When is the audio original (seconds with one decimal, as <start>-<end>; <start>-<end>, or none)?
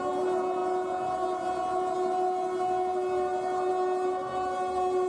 0.0-5.1